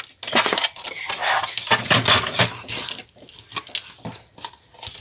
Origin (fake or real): real